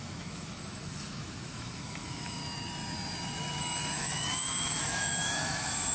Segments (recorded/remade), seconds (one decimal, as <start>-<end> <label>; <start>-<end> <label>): 0.0-2.4 remade; 2.4-3.6 recorded; 3.6-5.9 remade